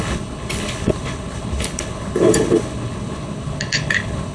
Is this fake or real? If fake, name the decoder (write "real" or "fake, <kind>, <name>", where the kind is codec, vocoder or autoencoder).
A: fake, codec, HILCodec